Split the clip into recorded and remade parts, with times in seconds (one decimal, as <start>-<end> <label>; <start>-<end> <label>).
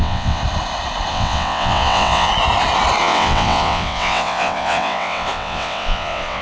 0.0-0.4 remade; 0.4-1.1 recorded; 1.1-2.3 remade; 2.3-3.0 recorded; 3.0-6.4 remade